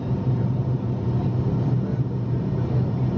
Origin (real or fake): real